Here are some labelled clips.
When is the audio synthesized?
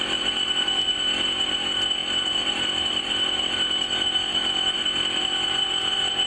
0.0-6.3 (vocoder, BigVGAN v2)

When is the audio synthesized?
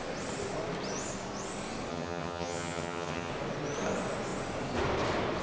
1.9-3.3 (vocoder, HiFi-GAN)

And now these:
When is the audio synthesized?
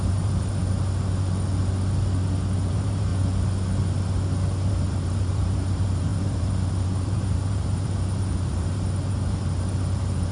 0.0-0.6 (vocoder, BigVGAN v2); 2.7-3.1; 4.7-10.3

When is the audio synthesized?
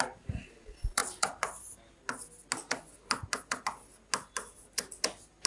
none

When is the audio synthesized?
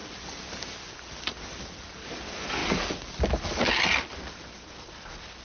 none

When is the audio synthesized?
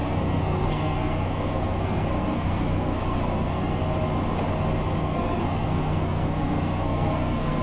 0.0-3.8 (codec, SNAC); 5.0-7.6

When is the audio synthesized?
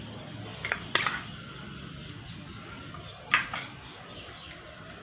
0.5-2.3 (vocoder, BigVGAN v2)